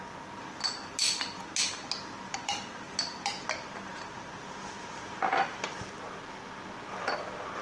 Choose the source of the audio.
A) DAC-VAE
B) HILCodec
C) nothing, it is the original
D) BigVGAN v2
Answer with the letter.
C